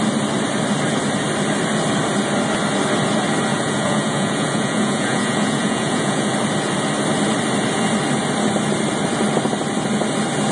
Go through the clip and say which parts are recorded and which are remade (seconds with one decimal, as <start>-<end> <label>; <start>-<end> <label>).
0.0-3.5 recorded; 3.5-6.3 remade; 6.3-10.5 recorded